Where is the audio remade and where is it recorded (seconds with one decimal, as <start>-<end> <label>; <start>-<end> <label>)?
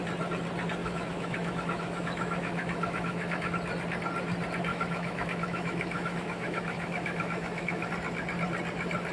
0.0-0.8 recorded; 0.8-3.5 remade; 3.5-4.7 recorded; 4.7-7.9 remade; 7.9-9.1 recorded